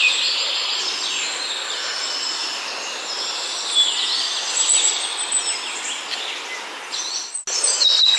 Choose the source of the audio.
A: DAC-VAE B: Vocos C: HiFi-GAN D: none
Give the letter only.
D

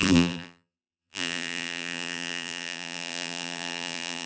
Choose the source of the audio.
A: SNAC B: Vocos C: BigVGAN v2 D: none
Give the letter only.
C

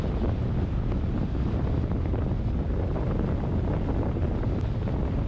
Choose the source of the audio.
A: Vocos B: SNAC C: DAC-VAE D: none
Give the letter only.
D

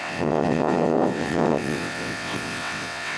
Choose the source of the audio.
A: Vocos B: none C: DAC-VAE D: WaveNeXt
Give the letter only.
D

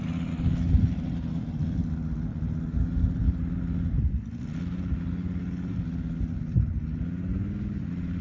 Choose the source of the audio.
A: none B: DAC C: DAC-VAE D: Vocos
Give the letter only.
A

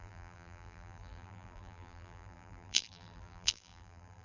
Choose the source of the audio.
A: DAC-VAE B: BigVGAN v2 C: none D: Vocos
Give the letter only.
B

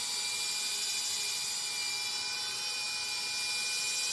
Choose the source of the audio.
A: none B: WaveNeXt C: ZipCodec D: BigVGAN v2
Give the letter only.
A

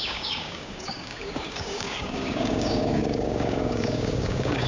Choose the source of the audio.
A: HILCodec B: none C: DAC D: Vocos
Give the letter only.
C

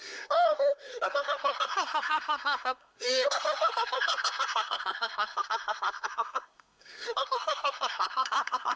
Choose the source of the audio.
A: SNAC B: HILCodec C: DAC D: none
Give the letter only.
A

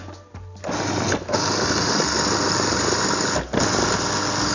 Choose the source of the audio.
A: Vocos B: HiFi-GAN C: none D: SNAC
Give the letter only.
C